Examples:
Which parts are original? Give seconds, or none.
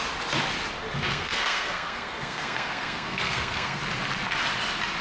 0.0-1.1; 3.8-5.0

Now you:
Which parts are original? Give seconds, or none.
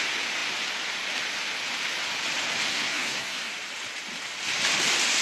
0.0-2.7; 3.5-5.2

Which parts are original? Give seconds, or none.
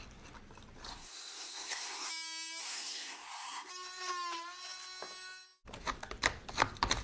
0.0-0.9; 2.1-2.6; 3.7-7.0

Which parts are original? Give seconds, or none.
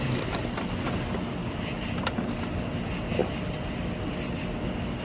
0.0-5.0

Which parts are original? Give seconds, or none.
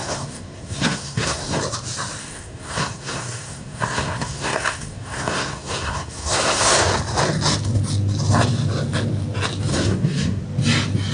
1.6-2.2; 6.7-9.7; 10.4-11.1